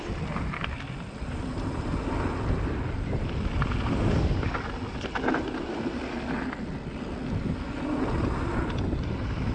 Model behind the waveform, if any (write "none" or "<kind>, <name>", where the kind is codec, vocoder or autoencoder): none